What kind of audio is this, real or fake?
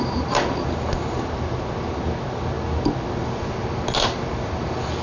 real